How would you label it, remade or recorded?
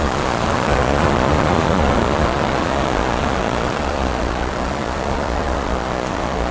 remade